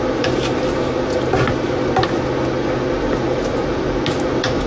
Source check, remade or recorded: recorded